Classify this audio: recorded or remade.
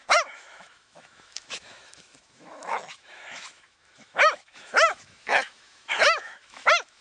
remade